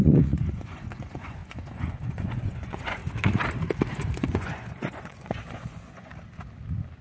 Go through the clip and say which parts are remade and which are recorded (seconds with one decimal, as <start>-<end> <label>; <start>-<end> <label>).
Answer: 0.0-3.0 remade; 3.0-3.9 recorded; 3.9-6.1 remade; 6.1-7.0 recorded